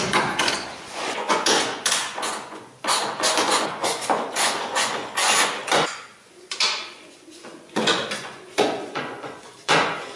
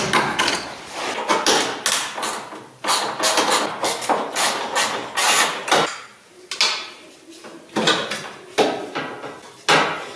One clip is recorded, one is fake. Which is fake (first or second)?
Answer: first